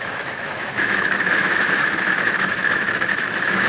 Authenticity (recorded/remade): remade